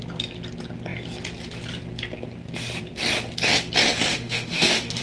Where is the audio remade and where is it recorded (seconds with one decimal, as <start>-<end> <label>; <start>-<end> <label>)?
0.0-4.1 recorded; 4.1-5.0 remade